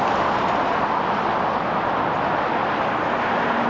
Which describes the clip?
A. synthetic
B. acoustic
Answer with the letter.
B